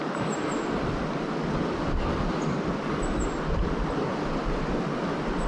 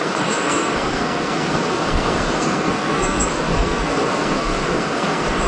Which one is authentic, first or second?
first